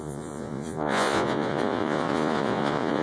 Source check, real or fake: fake